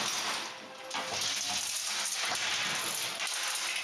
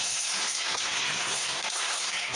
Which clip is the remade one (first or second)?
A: second